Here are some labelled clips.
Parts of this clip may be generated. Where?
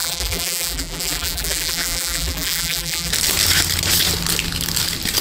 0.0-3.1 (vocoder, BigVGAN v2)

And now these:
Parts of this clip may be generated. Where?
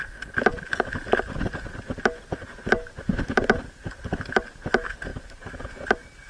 5.1-5.7 (vocoder, BigVGAN v2)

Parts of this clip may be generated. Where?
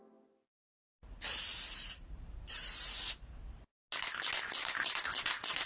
0.6-3.1 (vocoder, BigVGAN v2); 4.6-5.2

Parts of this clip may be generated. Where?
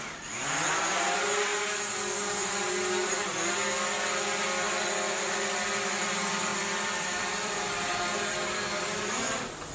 6.5-7.6 (vocoder, BigVGAN v2)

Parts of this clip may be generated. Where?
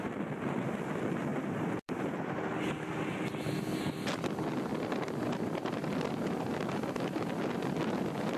1.3-2.4 (vocoder, BigVGAN v2)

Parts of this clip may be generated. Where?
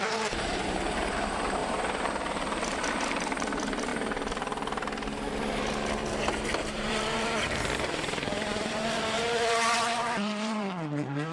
0.0-3.9 (vocoder, BigVGAN v2); 6.7-11.3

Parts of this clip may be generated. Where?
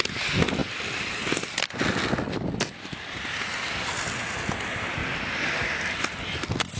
none